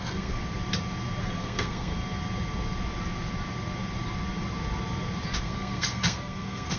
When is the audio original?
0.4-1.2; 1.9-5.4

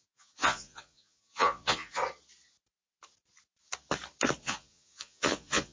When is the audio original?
2.0-4.4

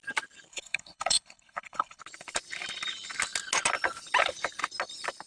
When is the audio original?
0.0-0.5; 2.0-5.3

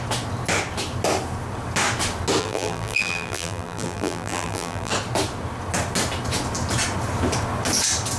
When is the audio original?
0.0-2.4; 4.9-8.2